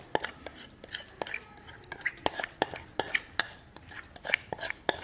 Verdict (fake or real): real